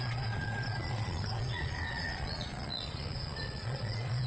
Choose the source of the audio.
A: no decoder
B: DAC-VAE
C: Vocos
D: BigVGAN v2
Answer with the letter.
C